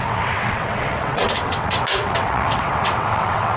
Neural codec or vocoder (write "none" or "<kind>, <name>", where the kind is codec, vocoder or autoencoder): vocoder, WaveNeXt